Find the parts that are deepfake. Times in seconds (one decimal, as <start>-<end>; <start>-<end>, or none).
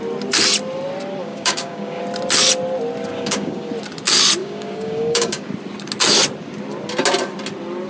1.2-2.0; 3.1-3.7; 4.4-5.5